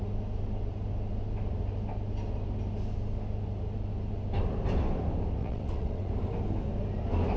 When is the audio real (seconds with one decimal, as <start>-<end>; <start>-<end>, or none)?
0.0-5.4; 6.1-7.4